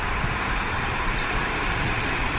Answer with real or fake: real